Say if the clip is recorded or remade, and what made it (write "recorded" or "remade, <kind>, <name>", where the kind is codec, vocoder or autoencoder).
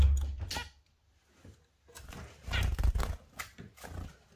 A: recorded